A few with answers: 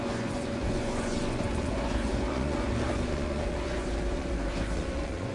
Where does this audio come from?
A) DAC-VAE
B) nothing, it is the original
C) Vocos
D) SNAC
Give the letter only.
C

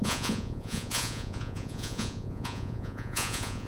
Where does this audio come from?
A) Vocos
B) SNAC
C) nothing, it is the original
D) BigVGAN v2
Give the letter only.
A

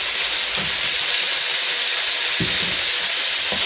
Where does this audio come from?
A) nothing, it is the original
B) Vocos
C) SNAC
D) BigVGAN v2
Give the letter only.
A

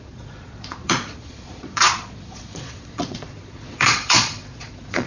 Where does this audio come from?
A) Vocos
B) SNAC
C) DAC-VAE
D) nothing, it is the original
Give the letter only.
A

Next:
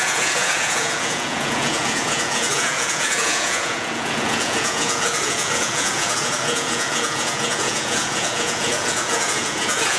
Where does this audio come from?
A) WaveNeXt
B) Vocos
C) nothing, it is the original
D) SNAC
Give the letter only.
B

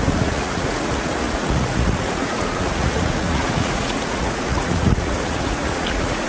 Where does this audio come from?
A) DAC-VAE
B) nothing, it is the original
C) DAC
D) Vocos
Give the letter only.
D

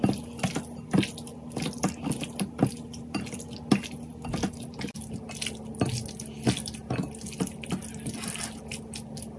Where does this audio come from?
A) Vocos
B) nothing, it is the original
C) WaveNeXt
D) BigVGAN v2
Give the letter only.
B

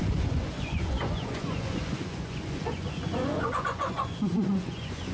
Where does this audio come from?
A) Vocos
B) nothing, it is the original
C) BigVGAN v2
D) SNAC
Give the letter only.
A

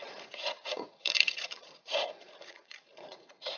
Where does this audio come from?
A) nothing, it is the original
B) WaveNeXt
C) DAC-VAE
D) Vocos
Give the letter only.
D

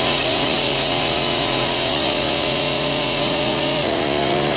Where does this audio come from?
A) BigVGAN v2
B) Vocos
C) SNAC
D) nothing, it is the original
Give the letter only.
B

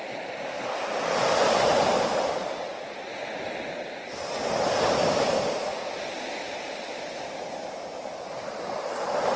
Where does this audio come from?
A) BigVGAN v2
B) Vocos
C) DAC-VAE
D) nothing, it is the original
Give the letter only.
D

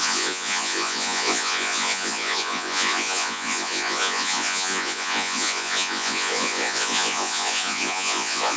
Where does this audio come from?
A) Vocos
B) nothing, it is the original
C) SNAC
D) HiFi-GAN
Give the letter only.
A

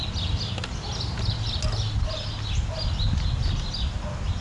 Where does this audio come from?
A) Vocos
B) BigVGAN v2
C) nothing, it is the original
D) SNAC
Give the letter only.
C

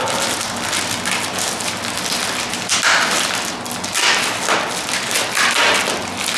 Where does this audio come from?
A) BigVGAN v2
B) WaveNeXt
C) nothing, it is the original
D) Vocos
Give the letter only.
C